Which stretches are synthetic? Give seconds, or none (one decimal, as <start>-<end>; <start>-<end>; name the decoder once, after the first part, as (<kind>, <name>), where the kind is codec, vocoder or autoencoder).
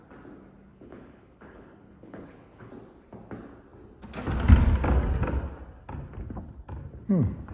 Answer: 0.7-2.7 (codec, HILCodec)